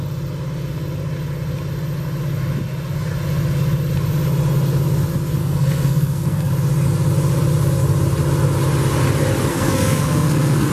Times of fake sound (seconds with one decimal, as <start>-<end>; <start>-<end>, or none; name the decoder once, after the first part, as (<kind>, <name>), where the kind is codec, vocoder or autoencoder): 5.4-6.5 (codec, SNAC); 9.5-10.7